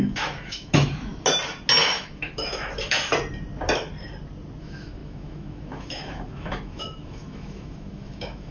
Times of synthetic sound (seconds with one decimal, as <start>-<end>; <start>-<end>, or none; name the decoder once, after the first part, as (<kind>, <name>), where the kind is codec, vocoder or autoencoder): 0.0-1.1 (autoencoder, DAC-VAE); 1.8-3.1; 4.6-8.5